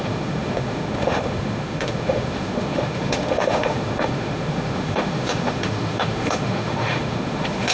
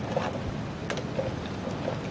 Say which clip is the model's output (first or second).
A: first